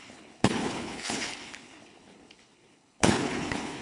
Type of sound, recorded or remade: remade